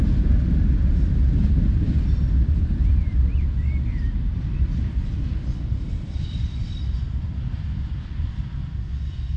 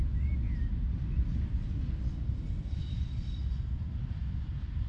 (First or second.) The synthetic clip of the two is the first